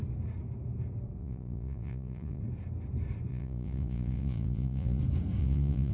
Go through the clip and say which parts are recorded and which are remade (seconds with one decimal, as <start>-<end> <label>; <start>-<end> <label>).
0.0-1.2 recorded; 1.2-2.4 remade; 2.4-3.3 recorded; 3.3-5.0 remade; 5.0-5.4 recorded; 5.4-5.9 remade